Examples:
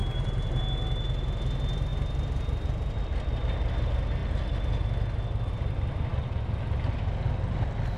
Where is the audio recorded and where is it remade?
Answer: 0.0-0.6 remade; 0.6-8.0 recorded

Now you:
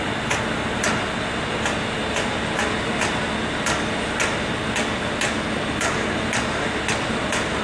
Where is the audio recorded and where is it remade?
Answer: 0.0-7.6 recorded

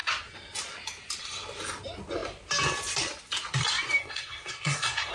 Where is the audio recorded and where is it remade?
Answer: 0.0-4.0 recorded; 4.0-5.1 remade

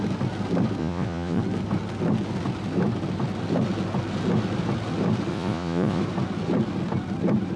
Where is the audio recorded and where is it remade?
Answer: 0.0-0.8 recorded; 0.8-1.4 remade; 1.4-5.3 recorded; 5.3-6.0 remade; 6.0-7.6 recorded

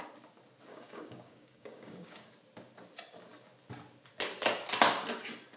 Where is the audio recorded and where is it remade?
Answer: 0.0-0.7 recorded; 0.7-2.3 remade; 2.3-5.6 recorded

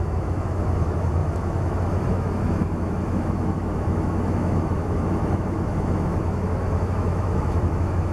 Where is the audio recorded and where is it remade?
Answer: 0.0-8.1 remade

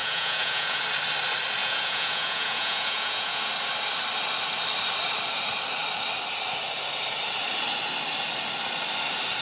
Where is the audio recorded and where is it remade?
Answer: 0.0-0.8 remade; 0.8-1.6 recorded; 1.6-3.5 remade; 3.5-9.4 recorded

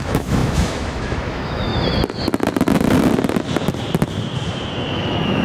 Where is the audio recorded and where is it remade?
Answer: 0.0-1.7 remade; 1.7-4.9 recorded; 4.9-5.4 remade